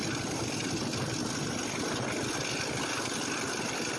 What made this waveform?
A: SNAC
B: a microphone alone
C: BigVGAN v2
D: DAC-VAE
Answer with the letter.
B